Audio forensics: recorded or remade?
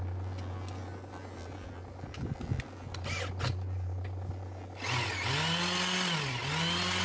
recorded